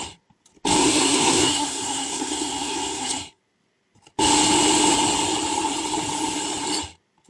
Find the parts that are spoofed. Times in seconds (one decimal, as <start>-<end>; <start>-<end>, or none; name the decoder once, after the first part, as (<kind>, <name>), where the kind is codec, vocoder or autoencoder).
0.8-3.4 (codec, SNAC)

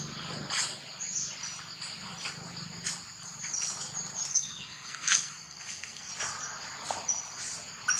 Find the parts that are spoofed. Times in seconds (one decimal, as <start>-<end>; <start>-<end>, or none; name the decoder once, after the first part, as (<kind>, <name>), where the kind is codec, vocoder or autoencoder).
4.3-6.1 (codec, SNAC)

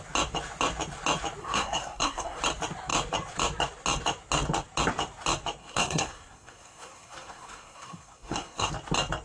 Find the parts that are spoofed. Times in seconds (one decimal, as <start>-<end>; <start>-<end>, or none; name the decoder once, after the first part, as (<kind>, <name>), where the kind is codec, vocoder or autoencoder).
1.4-2.4 (codec, SNAC); 5.6-8.7